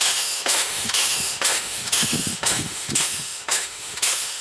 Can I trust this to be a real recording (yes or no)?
no